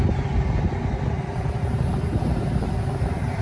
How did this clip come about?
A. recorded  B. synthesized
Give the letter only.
A